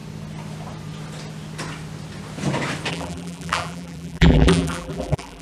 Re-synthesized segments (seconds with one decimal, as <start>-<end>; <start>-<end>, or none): 2.9-5.4